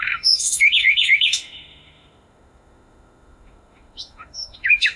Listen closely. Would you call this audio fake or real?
fake